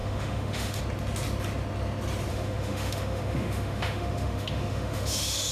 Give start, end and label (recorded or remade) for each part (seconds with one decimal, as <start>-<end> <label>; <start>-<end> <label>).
0.0-0.8 remade; 0.8-2.3 recorded; 2.3-5.5 remade